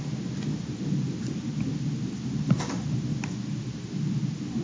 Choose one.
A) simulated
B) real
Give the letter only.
B